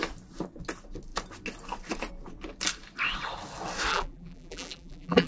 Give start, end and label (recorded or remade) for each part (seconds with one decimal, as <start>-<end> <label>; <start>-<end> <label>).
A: 0.0-3.9 recorded; 3.9-5.3 remade